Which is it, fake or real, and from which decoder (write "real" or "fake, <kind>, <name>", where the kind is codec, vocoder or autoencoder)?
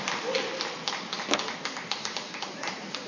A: real